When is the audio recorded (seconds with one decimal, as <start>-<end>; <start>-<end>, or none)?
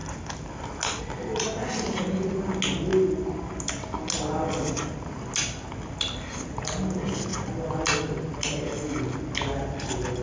0.0-10.2